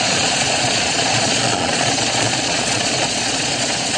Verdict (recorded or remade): remade